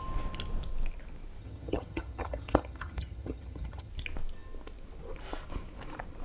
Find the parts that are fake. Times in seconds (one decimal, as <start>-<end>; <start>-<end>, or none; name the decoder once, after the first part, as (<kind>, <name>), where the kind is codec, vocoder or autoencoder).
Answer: 1.4-3.9 (vocoder, HiFi-GAN)